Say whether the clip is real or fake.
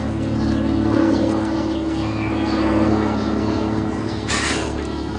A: fake